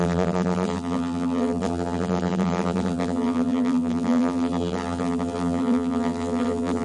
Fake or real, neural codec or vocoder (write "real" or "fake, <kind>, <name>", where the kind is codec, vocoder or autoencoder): fake, vocoder, BigVGAN v2